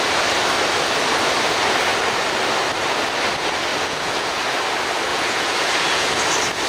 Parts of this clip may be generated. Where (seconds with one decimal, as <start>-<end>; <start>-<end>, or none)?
3.7-4.4; 5.1-6.2